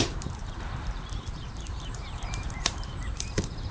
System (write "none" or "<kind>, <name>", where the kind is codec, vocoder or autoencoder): vocoder, BigVGAN v2